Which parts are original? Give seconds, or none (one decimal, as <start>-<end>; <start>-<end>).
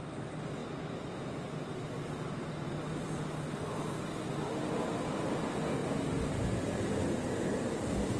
0.0-8.2